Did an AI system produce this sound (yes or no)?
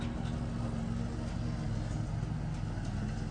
no